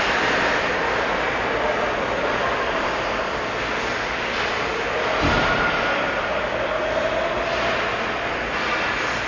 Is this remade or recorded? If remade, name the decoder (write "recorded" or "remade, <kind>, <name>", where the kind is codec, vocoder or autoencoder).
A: recorded